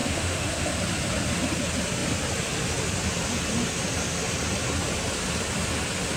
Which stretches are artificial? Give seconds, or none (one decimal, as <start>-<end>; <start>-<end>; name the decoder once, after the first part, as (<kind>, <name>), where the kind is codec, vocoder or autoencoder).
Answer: 0.0-0.7 (autoencoder, DAC-VAE)